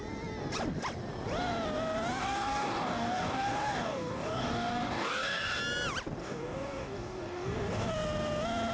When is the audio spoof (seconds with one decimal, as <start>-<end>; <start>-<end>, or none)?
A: 2.2-5.6; 6.2-7.9